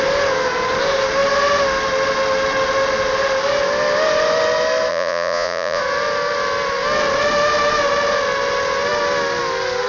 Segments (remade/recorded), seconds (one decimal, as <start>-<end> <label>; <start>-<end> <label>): 0.0-4.9 recorded; 4.9-5.8 remade; 5.8-9.9 recorded